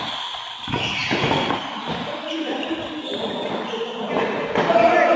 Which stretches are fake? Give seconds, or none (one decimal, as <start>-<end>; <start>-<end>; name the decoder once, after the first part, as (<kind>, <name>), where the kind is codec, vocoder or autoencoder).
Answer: none